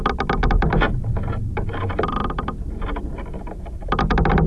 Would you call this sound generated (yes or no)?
no